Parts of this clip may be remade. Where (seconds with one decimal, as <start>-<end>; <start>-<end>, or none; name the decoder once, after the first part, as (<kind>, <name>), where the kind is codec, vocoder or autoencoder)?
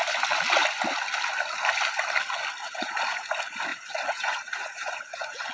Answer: 2.6-3.3 (vocoder, Vocos); 3.7-5.5